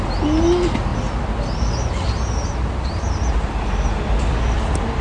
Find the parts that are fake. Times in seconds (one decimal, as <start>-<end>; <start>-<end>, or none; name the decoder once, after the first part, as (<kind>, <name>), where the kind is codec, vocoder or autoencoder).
none